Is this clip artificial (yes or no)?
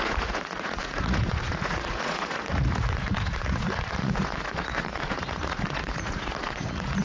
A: yes